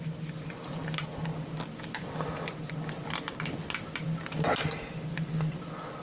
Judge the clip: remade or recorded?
recorded